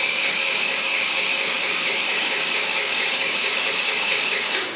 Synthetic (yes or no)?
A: yes